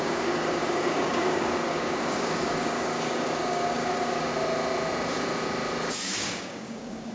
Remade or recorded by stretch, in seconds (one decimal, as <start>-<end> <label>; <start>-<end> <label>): 0.0-4.3 remade; 4.3-5.9 recorded; 5.9-7.1 remade